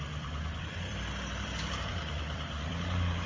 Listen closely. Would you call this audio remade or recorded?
remade